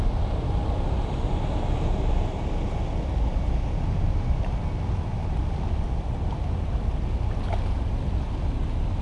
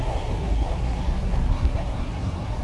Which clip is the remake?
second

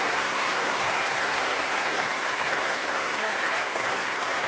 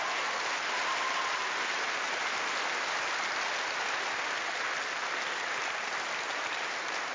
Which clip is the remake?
first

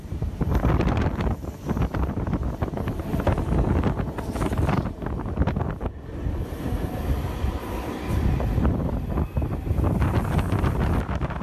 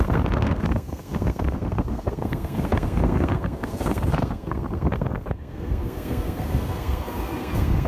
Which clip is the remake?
second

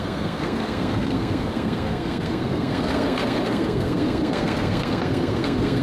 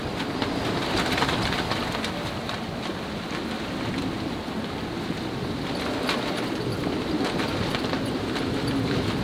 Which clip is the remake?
first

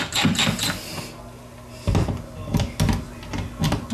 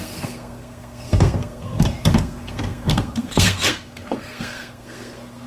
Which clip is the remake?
second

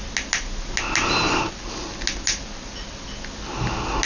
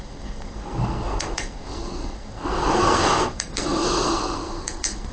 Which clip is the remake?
second